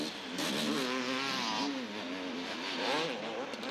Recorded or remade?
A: recorded